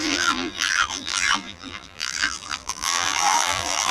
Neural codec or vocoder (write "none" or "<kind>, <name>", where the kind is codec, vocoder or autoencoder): vocoder, BigVGAN v2